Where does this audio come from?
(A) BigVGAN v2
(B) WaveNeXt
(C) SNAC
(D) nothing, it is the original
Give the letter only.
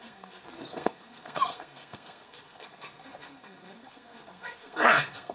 C